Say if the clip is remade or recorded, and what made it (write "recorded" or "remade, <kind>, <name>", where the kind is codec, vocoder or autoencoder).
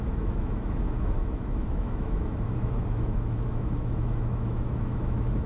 remade, autoencoder, DAC-VAE